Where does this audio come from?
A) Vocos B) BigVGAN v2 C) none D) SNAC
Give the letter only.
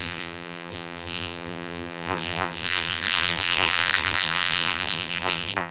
B